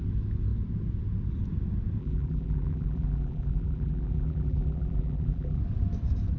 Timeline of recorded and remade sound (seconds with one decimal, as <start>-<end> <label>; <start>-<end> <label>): 0.0-2.0 recorded; 2.0-5.6 remade; 5.6-6.4 recorded